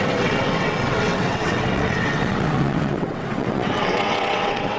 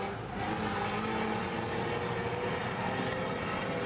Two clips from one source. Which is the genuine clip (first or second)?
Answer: second